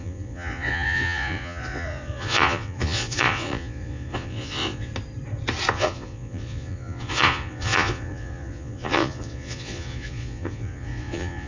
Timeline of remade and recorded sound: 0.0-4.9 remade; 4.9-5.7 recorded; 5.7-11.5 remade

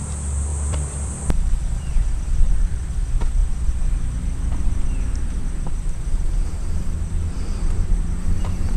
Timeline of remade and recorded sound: 0.0-0.5 recorded; 0.5-2.4 remade; 2.4-8.8 recorded

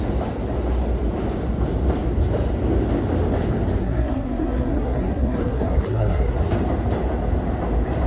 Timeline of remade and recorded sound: 0.0-3.8 recorded; 3.8-6.5 remade; 6.5-8.1 recorded

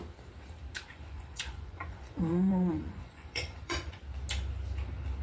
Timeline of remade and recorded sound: 0.0-0.9 recorded; 0.9-4.0 remade; 4.0-5.2 recorded